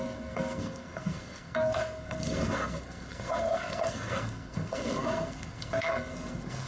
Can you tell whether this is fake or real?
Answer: fake